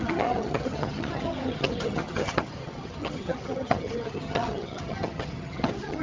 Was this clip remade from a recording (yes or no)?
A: yes